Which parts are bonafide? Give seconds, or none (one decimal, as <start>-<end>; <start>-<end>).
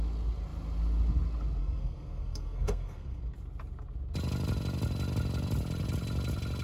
0.0-1.6; 3.2-6.6